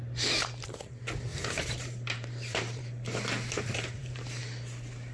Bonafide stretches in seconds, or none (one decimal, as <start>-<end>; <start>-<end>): 0.0-1.3; 4.4-5.1